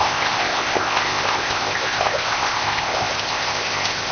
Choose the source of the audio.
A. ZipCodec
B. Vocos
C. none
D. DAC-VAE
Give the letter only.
A